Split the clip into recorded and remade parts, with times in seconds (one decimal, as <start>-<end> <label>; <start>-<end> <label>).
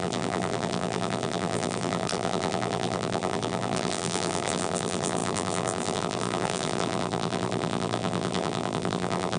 0.0-9.4 remade